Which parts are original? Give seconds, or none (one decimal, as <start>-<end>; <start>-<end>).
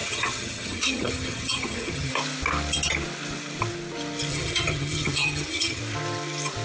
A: 2.1-4.3; 5.8-6.6